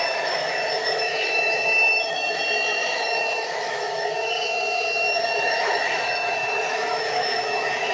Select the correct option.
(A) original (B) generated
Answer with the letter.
B